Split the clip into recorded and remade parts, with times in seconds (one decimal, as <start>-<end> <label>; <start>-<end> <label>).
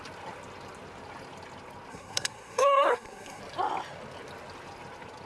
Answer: 0.0-1.9 recorded; 1.9-3.4 remade; 3.4-5.3 recorded